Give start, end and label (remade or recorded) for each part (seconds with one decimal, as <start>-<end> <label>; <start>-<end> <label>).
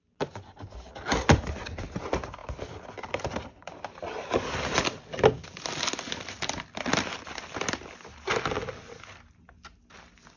0.0-10.4 recorded